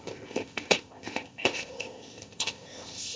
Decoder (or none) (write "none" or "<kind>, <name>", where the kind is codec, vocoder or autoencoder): codec, ZipCodec